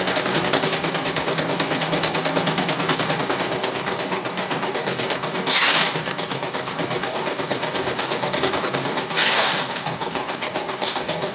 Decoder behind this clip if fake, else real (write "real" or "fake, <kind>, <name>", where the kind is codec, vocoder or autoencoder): fake, codec, DAC